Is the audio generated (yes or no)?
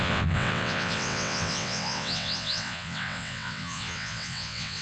yes